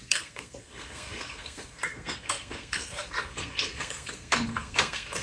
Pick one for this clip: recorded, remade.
remade